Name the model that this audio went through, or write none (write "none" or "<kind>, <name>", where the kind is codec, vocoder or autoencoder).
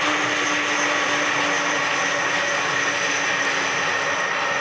none